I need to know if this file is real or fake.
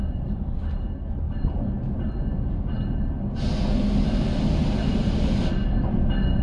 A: real